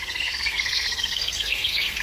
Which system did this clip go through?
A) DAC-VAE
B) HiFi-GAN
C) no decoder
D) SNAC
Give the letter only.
D